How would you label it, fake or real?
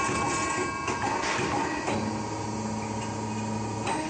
real